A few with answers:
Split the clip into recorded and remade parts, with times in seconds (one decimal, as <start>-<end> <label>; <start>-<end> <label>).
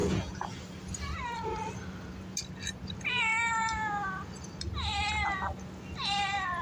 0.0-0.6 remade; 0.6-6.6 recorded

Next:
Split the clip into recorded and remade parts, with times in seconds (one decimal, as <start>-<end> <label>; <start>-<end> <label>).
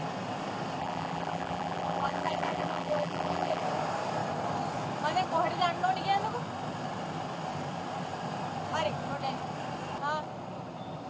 0.0-0.8 recorded; 0.8-3.6 remade; 3.6-11.1 recorded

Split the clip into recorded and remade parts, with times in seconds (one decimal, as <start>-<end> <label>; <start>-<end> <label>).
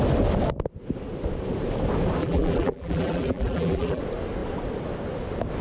0.0-2.2 recorded; 2.2-4.0 remade; 4.0-5.6 recorded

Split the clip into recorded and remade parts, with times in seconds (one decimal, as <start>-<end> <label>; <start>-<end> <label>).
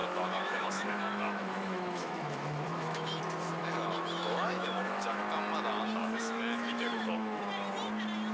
0.0-3.2 remade; 3.2-3.6 recorded; 3.6-5.2 remade; 5.2-6.0 recorded; 6.0-7.4 remade; 7.4-8.3 recorded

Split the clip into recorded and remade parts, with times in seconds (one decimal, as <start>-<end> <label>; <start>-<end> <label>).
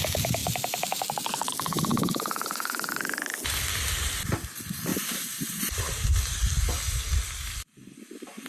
0.0-1.9 recorded; 1.9-2.9 remade; 2.9-4.9 recorded; 4.9-6.5 remade; 6.5-8.5 recorded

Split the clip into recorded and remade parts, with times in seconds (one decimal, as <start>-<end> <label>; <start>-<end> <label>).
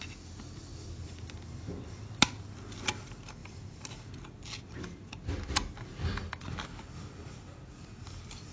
0.0-8.5 recorded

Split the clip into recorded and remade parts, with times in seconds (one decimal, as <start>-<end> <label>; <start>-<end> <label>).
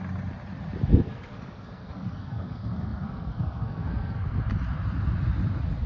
0.0-0.9 recorded; 0.9-4.4 remade; 4.4-5.9 recorded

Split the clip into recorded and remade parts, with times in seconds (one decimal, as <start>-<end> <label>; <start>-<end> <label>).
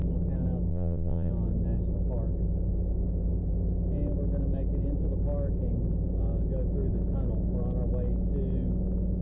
0.0-0.7 recorded; 0.7-1.3 remade; 1.3-9.2 recorded